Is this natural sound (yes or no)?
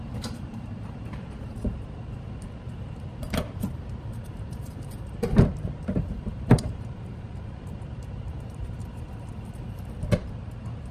no